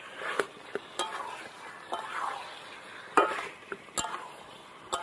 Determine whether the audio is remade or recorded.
recorded